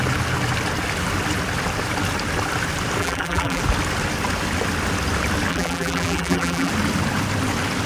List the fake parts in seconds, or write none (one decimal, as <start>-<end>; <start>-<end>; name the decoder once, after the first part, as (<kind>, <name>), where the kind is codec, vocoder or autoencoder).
3.0-3.6 (vocoder, BigVGAN v2); 5.5-6.7

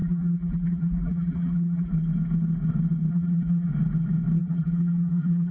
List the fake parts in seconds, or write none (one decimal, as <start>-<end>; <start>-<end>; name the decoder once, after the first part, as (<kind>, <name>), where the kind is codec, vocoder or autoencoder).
0.0-1.9 (vocoder, BigVGAN v2); 3.1-3.7; 4.4-5.5

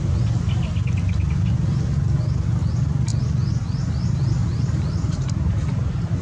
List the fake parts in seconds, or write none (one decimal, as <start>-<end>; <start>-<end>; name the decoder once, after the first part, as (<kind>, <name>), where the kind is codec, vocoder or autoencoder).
4.4-6.2 (vocoder, BigVGAN v2)

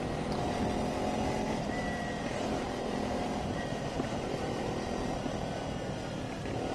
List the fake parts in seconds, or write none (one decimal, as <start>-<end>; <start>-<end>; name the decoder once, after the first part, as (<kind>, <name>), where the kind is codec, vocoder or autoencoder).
2.5-4.7 (vocoder, BigVGAN v2)

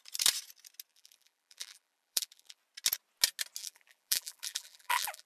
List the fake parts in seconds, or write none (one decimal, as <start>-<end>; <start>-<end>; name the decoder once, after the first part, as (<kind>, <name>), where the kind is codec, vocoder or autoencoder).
0.9-2.6 (vocoder, BigVGAN v2); 3.6-5.3

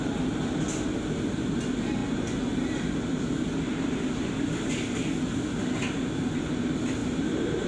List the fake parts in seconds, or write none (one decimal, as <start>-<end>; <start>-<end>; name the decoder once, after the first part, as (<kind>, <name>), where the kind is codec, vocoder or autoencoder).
7.0-7.7 (vocoder, BigVGAN v2)

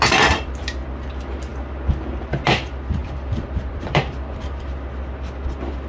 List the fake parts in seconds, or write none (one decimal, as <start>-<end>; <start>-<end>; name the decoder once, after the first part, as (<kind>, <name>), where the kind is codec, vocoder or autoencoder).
3.0-4.3 (vocoder, BigVGAN v2)